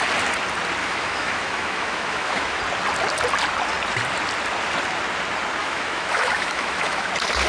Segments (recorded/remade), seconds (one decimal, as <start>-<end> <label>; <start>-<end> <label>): 0.0-0.8 recorded; 0.8-2.6 remade; 2.6-5.6 recorded; 5.6-7.1 remade; 7.1-7.5 recorded